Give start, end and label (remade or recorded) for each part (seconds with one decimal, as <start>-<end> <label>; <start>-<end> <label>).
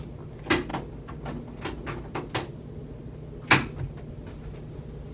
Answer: 0.0-5.1 recorded